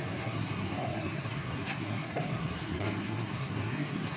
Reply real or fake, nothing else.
fake